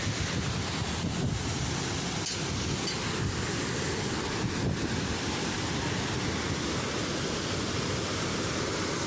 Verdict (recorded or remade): recorded